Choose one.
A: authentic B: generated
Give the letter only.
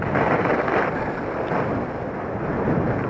A